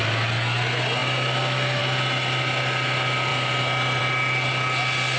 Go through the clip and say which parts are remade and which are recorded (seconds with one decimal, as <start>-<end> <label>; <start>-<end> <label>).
0.0-5.2 recorded